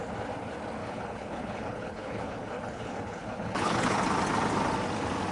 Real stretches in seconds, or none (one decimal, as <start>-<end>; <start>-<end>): 0.0-0.8; 4.0-5.3